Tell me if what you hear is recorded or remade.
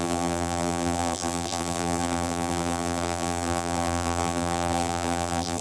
remade